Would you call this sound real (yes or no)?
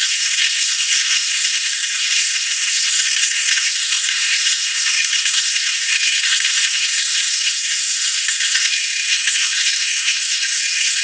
no